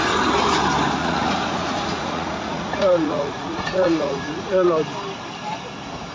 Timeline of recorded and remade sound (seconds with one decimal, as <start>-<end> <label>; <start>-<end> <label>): 0.0-1.0 recorded; 1.0-4.7 remade; 4.7-6.1 recorded